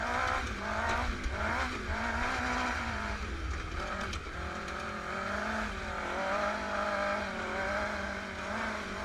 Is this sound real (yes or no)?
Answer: yes